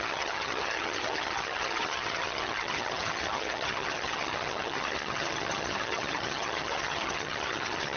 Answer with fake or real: fake